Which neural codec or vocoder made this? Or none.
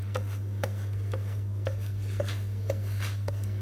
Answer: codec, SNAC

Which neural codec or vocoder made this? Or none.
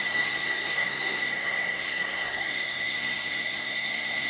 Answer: codec, SNAC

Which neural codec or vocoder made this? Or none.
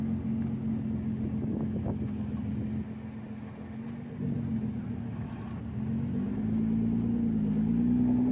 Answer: none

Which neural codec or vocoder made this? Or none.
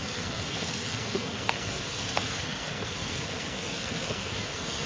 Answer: codec, SNAC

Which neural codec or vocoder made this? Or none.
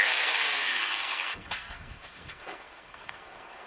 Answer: codec, SNAC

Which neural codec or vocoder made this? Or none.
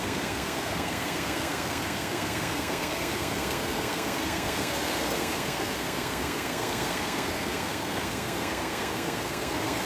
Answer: codec, SNAC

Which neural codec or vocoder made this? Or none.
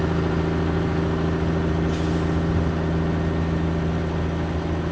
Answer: none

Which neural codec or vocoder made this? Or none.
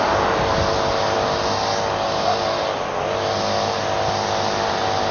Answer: none